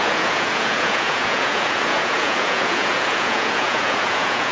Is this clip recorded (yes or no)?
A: no